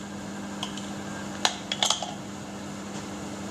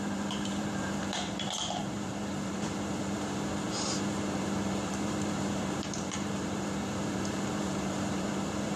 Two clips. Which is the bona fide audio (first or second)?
first